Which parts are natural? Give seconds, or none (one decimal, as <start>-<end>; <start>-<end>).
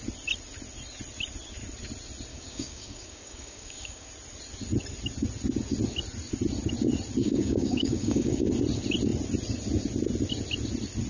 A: 0.0-2.3; 4.1-7.2; 8.5-11.1